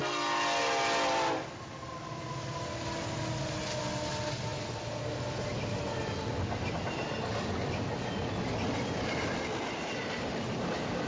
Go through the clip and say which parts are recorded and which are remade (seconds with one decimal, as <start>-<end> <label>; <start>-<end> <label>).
0.0-11.1 recorded